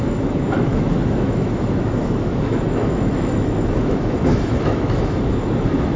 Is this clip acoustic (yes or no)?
no